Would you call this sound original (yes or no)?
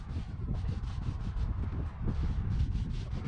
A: yes